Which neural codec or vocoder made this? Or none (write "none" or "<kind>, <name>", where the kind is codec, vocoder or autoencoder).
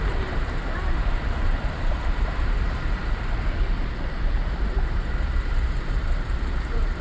vocoder, BigVGAN v2